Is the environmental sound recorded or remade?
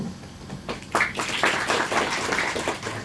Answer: recorded